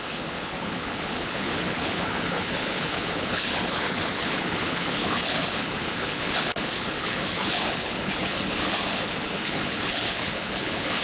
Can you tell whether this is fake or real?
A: fake